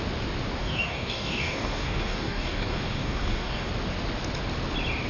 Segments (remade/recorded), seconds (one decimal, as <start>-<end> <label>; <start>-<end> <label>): 0.0-0.6 recorded; 0.6-3.7 remade; 3.7-5.1 recorded